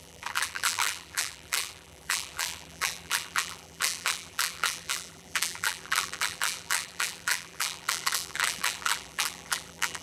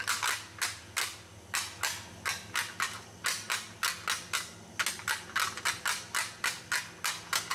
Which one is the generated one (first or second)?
first